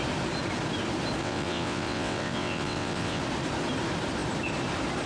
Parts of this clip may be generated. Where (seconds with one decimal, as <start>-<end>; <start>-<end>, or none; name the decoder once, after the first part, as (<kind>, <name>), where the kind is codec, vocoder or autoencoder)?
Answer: 1.2-3.2 (vocoder, WaveNeXt)